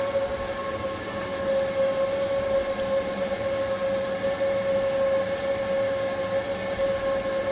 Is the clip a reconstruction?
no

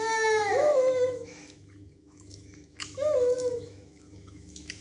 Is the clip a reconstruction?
yes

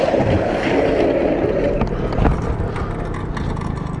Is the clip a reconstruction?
no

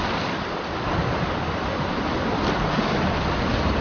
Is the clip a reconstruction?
no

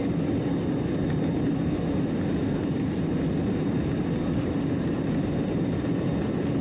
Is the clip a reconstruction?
no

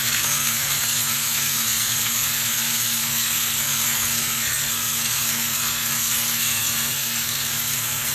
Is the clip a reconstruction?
yes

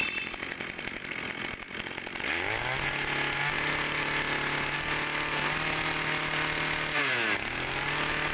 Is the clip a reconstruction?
no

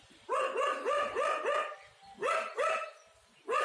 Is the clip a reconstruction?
no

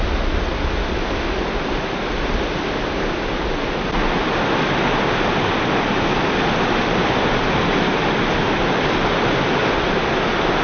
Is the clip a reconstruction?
no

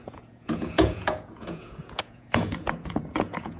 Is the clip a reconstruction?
yes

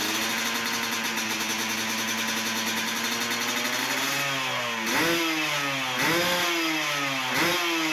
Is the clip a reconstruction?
no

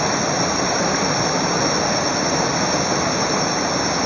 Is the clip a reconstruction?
no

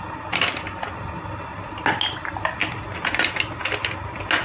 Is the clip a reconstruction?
no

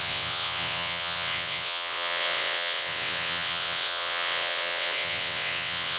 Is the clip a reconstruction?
yes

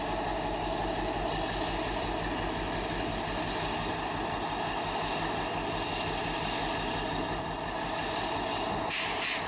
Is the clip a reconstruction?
no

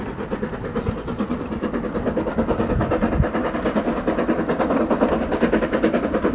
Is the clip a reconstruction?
no